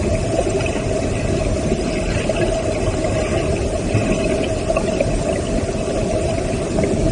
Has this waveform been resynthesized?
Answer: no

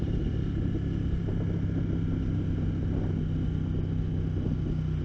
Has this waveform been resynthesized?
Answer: no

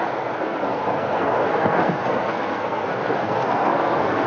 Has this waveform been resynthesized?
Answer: yes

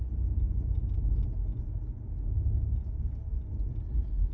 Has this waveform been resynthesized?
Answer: no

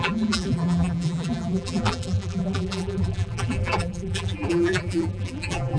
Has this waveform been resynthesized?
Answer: yes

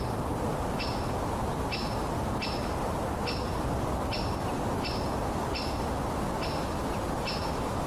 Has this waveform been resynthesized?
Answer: no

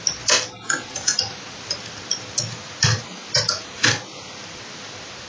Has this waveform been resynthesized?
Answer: no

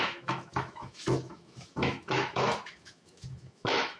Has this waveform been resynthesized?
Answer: yes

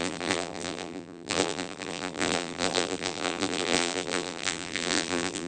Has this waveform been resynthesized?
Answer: yes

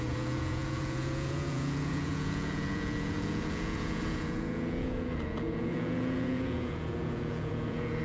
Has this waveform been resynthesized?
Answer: yes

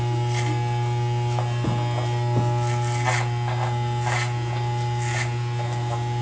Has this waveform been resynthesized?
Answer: no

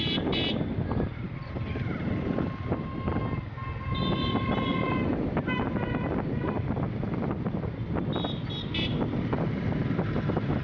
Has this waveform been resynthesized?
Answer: no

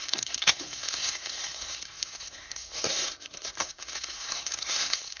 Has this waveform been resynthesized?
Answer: yes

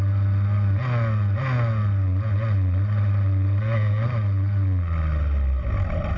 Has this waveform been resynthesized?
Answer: no